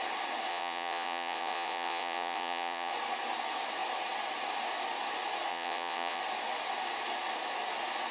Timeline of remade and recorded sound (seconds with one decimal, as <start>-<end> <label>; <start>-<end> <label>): 0.0-0.5 recorded; 0.5-2.9 remade; 2.9-5.5 recorded; 5.5-6.2 remade; 6.2-8.1 recorded